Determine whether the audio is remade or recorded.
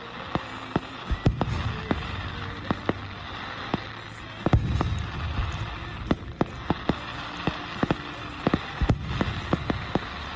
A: recorded